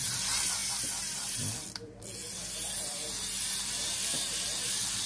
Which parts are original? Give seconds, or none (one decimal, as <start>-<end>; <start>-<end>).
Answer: none